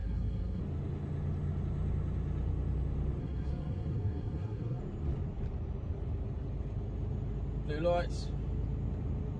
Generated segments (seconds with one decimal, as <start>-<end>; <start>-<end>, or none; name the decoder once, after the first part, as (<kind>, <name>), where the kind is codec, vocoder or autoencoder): 0.0-0.6 (codec, SNAC); 3.2-4.8